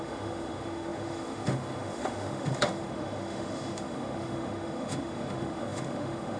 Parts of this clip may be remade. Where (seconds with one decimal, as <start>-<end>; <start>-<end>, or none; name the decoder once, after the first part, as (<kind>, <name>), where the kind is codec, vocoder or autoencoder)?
0.0-6.4 (autoencoder, DAC-VAE)